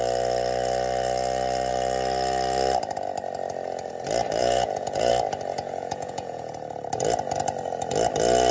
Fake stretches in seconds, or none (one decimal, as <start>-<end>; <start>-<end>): 4.4-5.1; 5.5-6.5